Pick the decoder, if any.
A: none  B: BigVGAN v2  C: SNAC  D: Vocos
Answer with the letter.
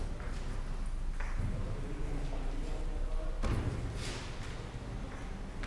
A